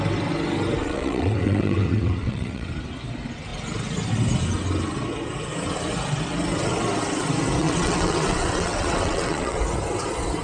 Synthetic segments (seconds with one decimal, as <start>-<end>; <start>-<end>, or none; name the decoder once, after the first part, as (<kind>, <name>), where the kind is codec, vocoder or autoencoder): 0.8-2.7 (vocoder, WaveNeXt); 7.6-9.6